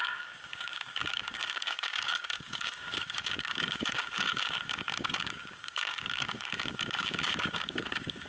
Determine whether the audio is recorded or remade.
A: remade